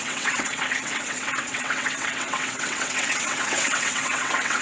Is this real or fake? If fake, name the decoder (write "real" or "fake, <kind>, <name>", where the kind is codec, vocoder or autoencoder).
fake, vocoder, WaveNeXt